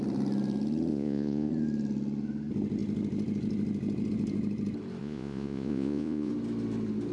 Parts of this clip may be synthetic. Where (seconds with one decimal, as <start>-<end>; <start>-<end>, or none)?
0.9-1.5; 5.0-6.3